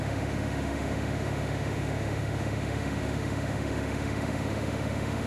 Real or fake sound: fake